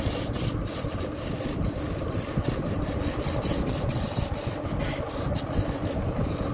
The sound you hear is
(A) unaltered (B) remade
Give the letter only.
A